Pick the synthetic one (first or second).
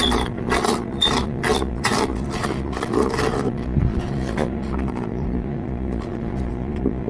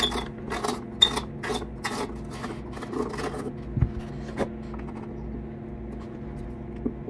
first